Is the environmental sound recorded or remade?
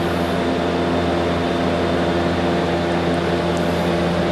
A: recorded